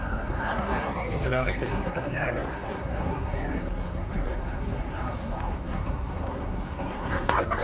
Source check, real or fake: fake